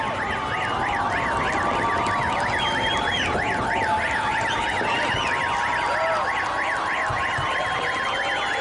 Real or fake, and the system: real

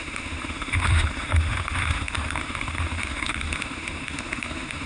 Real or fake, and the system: fake, autoencoder, DAC-VAE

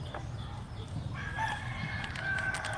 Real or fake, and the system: real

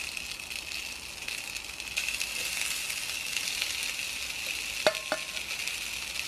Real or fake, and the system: real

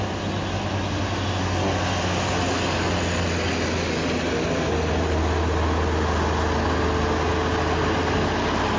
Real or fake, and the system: real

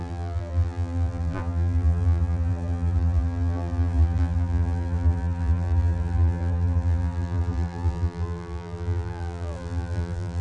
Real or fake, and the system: fake, vocoder, BigVGAN v2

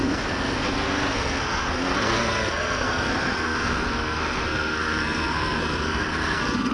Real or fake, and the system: fake, codec, SNAC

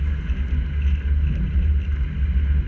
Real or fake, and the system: real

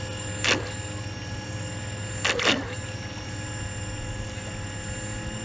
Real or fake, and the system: real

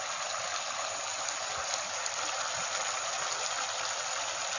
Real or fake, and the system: real